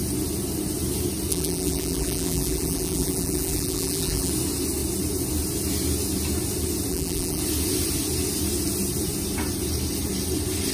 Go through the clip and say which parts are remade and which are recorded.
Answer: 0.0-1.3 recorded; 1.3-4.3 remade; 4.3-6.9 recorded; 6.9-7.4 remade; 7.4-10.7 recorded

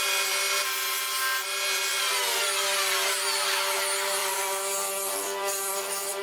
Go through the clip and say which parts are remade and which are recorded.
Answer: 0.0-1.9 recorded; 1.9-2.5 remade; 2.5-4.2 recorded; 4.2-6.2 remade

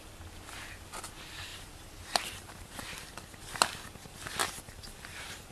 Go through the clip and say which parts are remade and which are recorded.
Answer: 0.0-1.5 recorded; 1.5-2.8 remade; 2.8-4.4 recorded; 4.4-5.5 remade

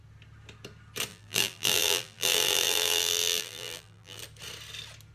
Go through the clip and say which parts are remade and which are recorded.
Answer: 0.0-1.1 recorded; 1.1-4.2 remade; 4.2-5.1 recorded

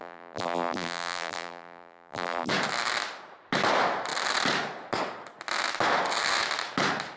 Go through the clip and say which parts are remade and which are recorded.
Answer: 0.0-2.5 remade; 2.5-7.2 recorded

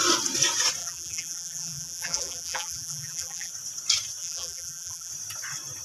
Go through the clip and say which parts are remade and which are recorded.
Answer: 0.0-0.8 recorded; 0.8-3.5 remade; 3.5-4.2 recorded; 4.2-5.1 remade; 5.1-5.8 recorded

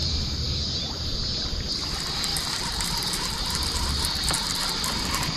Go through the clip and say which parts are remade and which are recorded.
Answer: 0.0-0.7 remade; 0.7-2.3 recorded; 2.3-3.9 remade; 3.9-5.4 recorded